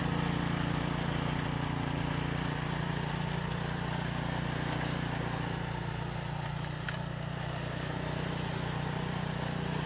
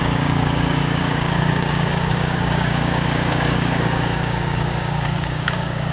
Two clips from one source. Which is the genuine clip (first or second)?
first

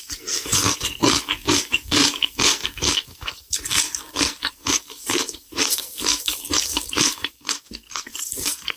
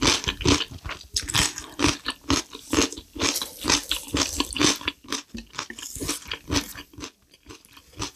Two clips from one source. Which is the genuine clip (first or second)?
second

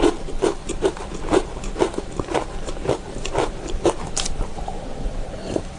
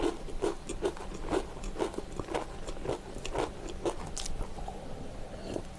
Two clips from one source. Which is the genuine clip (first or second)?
second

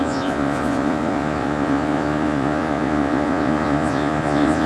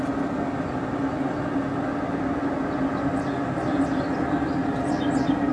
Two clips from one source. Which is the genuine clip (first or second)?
second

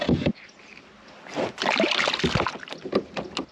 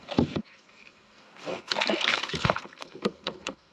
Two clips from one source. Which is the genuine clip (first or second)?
first